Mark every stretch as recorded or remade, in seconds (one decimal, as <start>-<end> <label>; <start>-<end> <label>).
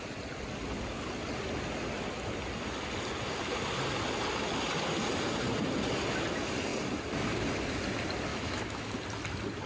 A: 0.0-8.3 recorded; 8.3-8.9 remade; 8.9-9.7 recorded